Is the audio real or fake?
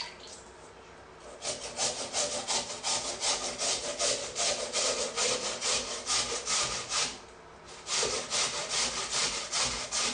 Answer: real